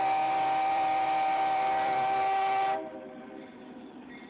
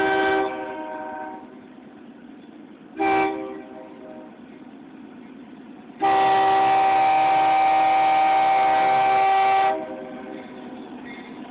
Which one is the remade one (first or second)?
first